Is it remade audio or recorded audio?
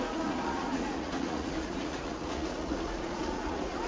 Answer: remade